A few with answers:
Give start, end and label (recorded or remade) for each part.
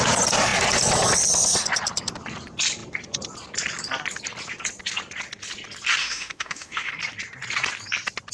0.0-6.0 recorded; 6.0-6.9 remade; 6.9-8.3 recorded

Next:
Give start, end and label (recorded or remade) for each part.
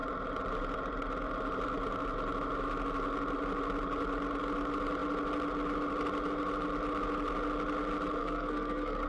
0.0-8.2 recorded; 8.2-9.1 remade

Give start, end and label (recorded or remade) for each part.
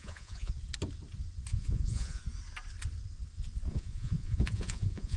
0.0-0.5 remade; 0.5-1.5 recorded; 1.5-2.2 remade; 2.2-3.7 recorded; 3.7-5.2 remade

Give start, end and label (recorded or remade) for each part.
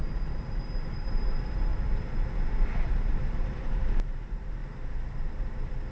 0.0-1.7 remade; 1.7-2.9 recorded; 2.9-4.6 remade; 4.6-5.9 recorded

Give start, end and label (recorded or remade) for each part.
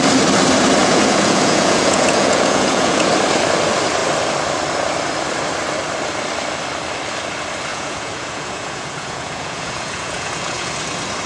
0.0-0.8 recorded; 0.8-3.1 remade; 3.1-7.7 recorded; 7.7-10.7 remade; 10.7-11.3 recorded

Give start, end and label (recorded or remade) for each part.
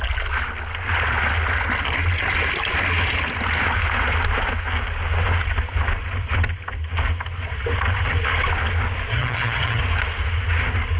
0.0-9.1 recorded; 9.1-9.8 remade; 9.8-11.0 recorded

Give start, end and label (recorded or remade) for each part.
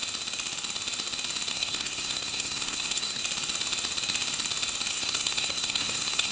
0.0-1.5 recorded; 1.5-3.2 remade; 3.2-4.9 recorded; 4.9-6.3 remade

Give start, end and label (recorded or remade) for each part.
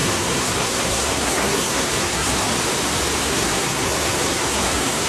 0.0-2.5 remade; 2.5-3.2 recorded; 3.2-5.1 remade